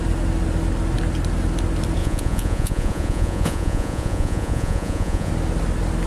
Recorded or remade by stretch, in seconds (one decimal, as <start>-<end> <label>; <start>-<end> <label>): 0.0-2.0 recorded; 2.0-5.3 remade; 5.3-6.1 recorded